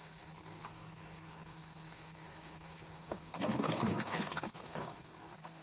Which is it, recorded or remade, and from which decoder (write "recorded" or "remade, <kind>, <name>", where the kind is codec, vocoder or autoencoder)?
remade, codec, SNAC